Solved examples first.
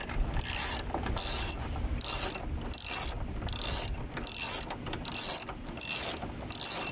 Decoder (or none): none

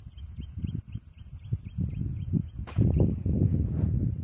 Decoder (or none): none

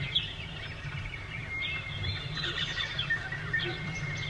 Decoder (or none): vocoder, BigVGAN v2